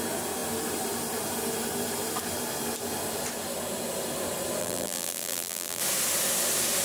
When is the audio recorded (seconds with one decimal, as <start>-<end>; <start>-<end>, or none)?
0.0-4.6; 5.8-6.8